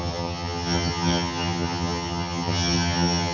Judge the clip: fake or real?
fake